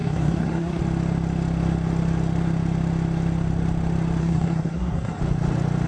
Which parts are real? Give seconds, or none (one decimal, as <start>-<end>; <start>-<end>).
0.8-4.2; 5.2-5.9